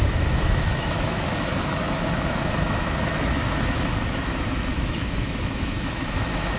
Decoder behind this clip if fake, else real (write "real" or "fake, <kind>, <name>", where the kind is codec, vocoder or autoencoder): fake, autoencoder, DAC-VAE